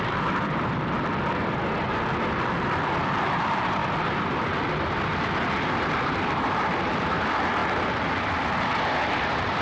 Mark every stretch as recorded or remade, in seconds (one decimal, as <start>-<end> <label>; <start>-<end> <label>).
0.0-1.6 remade; 1.6-2.5 recorded; 2.5-3.8 remade; 3.8-5.5 recorded; 5.5-9.6 remade